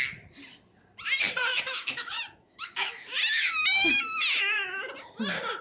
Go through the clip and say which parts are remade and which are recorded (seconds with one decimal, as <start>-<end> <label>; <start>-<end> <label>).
0.0-1.5 recorded; 1.5-4.9 remade; 4.9-5.6 recorded